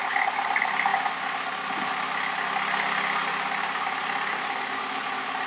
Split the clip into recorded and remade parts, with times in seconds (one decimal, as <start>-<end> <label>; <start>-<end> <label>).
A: 0.0-5.5 recorded